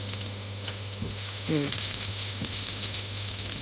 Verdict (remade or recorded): remade